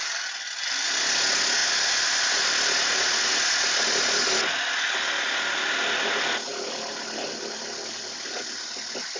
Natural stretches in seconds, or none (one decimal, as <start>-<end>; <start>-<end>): 0.0-9.2